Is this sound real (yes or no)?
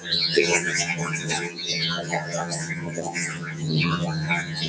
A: no